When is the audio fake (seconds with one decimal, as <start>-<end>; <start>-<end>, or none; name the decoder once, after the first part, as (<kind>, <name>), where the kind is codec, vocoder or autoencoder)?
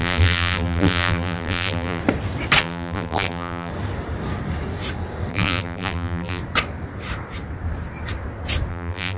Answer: 0.0-2.0 (vocoder, BigVGAN v2); 2.6-3.7; 5.3-6.4; 8.7-9.2